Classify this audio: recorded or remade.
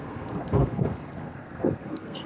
remade